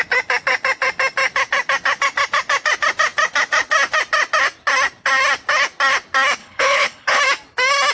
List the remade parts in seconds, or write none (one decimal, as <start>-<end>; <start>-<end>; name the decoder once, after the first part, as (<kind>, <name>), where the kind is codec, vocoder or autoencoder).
6.4-7.2 (codec, HILCodec)